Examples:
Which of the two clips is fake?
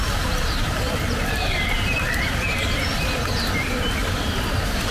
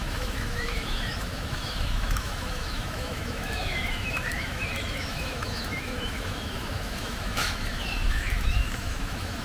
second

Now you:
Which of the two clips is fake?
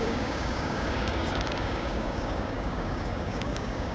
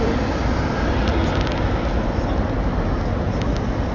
first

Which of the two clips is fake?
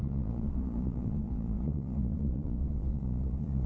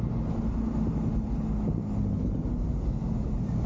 first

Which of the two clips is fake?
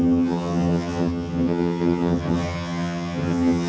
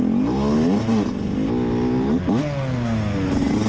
first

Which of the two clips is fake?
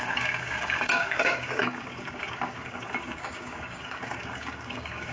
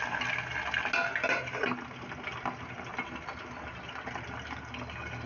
first